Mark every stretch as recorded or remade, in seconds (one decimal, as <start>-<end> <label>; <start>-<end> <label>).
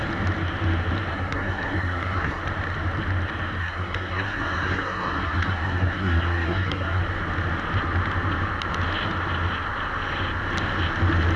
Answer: 0.0-1.1 recorded; 1.1-2.4 remade; 2.4-3.6 recorded; 3.6-7.0 remade; 7.0-11.4 recorded